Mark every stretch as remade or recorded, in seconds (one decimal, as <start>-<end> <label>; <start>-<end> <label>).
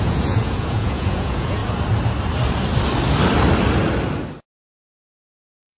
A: 0.0-1.6 remade; 1.6-5.1 recorded; 5.1-5.8 remade